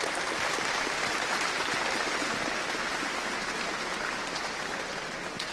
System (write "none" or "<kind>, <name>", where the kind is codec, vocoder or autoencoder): none